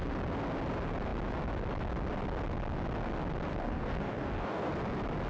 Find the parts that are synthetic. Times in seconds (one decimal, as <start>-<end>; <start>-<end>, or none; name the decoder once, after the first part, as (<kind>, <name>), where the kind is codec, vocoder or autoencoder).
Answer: 3.5-4.7 (codec, DAC)